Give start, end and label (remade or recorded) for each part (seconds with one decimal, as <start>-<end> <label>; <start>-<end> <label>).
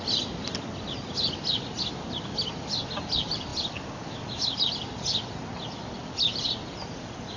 0.0-7.4 recorded